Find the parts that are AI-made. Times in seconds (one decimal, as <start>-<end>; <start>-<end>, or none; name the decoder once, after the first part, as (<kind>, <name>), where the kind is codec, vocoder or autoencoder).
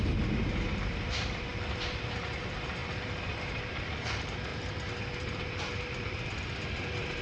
0.0-7.2 (vocoder, BigVGAN v2)